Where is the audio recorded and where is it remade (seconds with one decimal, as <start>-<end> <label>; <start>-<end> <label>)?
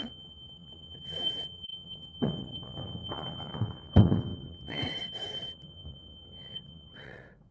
0.0-7.5 remade